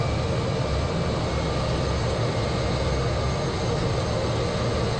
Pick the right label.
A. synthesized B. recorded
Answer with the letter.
B